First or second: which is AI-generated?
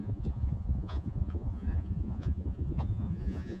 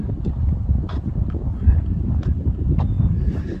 first